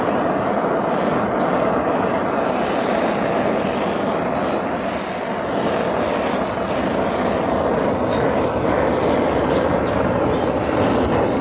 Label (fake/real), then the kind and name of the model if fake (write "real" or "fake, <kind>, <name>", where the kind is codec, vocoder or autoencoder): real